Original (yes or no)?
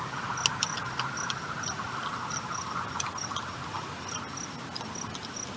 yes